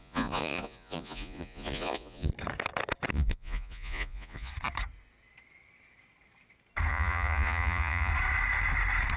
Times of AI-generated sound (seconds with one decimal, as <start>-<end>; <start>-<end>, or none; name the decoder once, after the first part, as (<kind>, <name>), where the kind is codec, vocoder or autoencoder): 0.0-2.3 (vocoder, Vocos); 3.1-4.5; 6.9-8.1